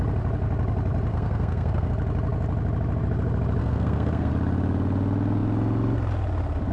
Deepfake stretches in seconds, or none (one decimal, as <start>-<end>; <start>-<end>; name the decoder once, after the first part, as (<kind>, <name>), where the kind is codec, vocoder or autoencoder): 1.1-1.9 (codec, SNAC); 3.6-4.3